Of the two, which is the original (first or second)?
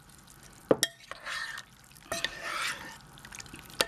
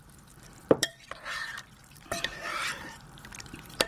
first